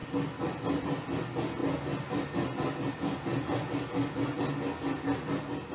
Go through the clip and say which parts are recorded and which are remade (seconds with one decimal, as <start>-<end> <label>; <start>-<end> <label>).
0.0-5.7 recorded